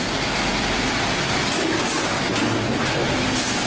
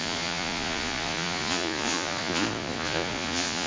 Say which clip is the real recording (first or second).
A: first